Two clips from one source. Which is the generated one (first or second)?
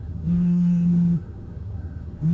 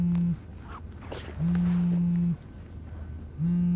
first